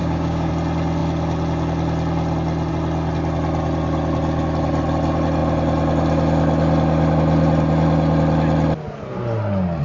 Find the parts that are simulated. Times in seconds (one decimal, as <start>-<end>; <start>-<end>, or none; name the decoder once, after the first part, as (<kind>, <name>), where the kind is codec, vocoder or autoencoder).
0.0-0.5 (codec, DAC)